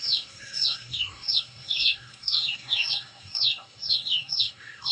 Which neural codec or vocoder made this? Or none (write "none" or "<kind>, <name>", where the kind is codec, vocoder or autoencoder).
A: codec, SNAC